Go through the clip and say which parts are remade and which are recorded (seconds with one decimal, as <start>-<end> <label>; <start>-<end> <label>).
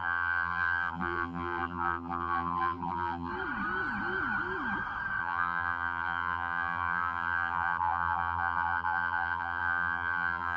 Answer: 0.0-3.3 remade; 3.3-5.2 recorded; 5.2-10.6 remade